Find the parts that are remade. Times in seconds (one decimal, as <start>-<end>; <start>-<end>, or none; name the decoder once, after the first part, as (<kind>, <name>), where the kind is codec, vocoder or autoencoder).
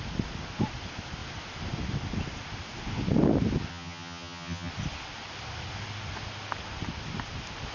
3.7-4.7 (vocoder, HiFi-GAN)